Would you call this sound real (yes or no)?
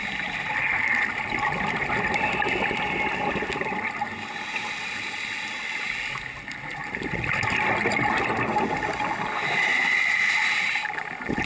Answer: yes